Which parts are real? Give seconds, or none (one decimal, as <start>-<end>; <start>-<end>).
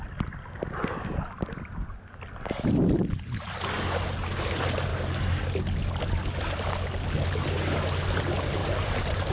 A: 0.0-4.9; 5.4-8.6